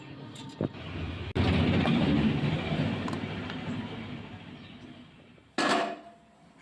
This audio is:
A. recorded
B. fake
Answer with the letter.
A